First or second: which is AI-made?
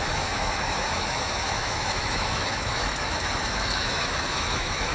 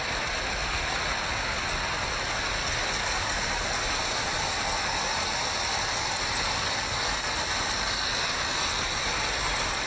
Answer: first